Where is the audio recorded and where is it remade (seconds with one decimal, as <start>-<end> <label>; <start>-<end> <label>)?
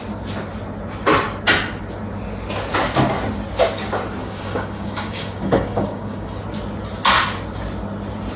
0.0-4.2 recorded; 4.2-6.4 remade; 6.4-8.4 recorded